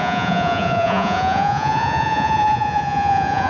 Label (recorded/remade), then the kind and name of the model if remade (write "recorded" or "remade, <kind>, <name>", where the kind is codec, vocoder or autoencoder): remade, vocoder, Vocos